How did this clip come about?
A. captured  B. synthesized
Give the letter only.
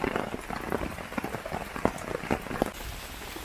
A